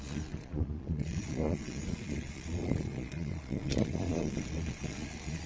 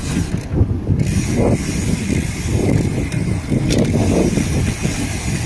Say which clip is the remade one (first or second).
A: first